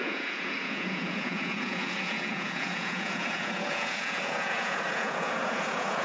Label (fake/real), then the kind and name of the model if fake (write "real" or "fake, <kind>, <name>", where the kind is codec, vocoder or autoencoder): fake, vocoder, Vocos